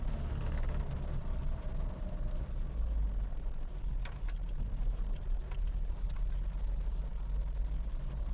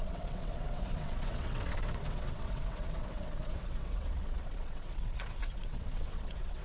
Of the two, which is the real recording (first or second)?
first